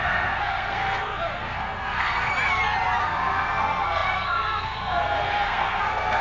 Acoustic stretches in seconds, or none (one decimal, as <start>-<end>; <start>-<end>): 2.3-3.0